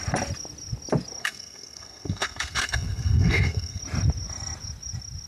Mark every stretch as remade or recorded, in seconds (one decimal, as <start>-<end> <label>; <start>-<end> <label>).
0.0-1.2 recorded; 1.2-3.8 remade; 3.8-5.3 recorded